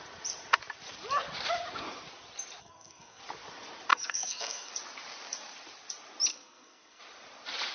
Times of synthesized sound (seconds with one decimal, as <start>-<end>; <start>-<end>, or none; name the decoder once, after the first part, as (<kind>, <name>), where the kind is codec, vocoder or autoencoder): 2.6-3.2 (codec, SNAC); 3.9-4.7; 6.3-7.0